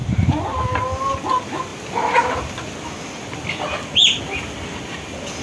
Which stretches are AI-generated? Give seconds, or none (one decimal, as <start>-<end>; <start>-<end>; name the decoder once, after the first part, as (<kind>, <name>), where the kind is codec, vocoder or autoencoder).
0.0-0.6 (vocoder, BigVGAN v2)